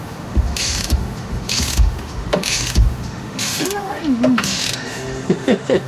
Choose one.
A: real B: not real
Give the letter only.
B